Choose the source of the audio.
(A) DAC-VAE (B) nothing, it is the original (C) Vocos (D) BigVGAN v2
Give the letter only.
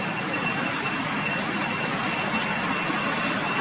D